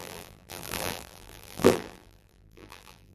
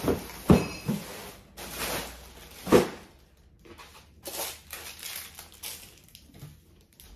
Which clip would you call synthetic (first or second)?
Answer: first